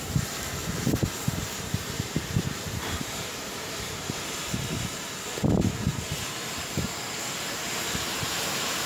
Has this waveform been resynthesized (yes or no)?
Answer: yes